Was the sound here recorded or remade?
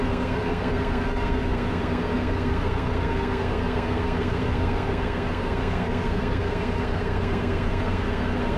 remade